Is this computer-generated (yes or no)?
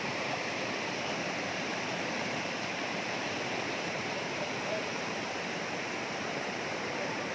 yes